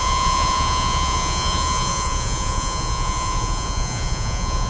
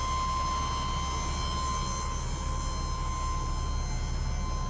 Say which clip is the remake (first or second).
first